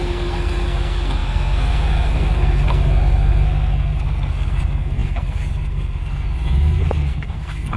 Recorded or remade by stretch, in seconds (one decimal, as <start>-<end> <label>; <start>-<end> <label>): 0.0-7.8 remade